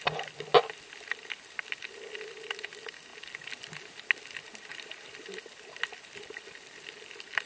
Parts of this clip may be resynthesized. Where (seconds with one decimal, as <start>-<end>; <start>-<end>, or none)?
none